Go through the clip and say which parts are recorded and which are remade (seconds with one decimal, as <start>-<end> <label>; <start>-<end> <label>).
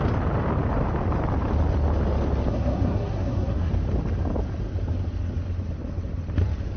0.0-2.5 recorded; 2.5-3.7 remade; 3.7-6.8 recorded